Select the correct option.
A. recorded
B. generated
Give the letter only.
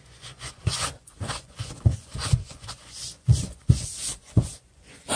B